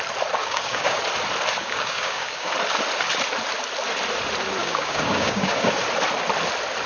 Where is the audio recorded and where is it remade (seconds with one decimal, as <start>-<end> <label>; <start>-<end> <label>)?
0.0-0.4 recorded; 0.4-1.0 remade; 1.0-1.6 recorded; 1.6-2.5 remade; 2.5-4.6 recorded; 4.6-5.7 remade; 5.7-6.9 recorded